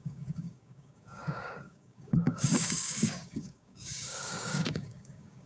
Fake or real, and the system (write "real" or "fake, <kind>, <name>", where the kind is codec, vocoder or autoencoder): fake, codec, DAC